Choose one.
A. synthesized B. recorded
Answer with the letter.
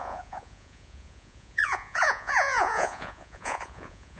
A